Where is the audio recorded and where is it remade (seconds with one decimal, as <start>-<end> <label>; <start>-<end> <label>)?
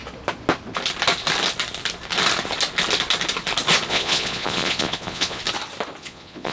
0.0-3.9 recorded; 3.9-5.4 remade; 5.4-6.0 recorded; 6.0-6.5 remade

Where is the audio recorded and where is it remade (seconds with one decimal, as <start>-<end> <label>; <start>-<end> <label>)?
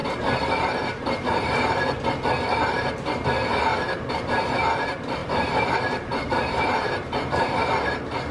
0.0-2.0 remade; 2.0-3.7 recorded; 3.7-4.6 remade; 4.6-5.2 recorded; 5.2-7.9 remade; 7.9-8.3 recorded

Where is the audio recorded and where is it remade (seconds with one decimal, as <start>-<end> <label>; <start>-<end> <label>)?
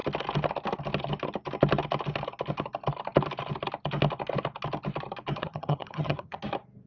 0.0-5.4 recorded; 5.4-6.4 remade; 6.4-6.9 recorded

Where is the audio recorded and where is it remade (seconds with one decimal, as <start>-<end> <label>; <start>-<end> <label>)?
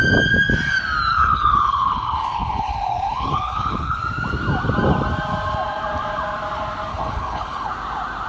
0.0-1.1 recorded; 1.1-4.0 remade; 4.0-6.9 recorded; 6.9-7.7 remade; 7.7-8.3 recorded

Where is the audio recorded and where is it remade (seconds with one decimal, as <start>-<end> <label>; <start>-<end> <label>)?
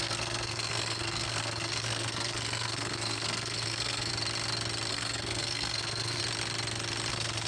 0.0-4.1 remade; 4.1-4.9 recorded; 4.9-6.2 remade; 6.2-7.1 recorded; 7.1-7.5 remade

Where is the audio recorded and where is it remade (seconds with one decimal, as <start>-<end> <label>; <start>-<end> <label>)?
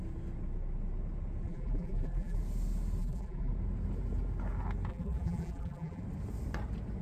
0.0-1.4 recorded; 1.4-2.4 remade; 2.4-3.0 recorded; 3.0-3.5 remade; 3.5-4.9 recorded; 4.9-6.0 remade; 6.0-7.0 recorded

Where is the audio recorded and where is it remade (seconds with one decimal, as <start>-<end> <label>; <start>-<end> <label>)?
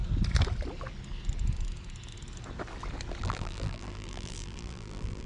0.0-3.2 recorded; 3.2-5.3 remade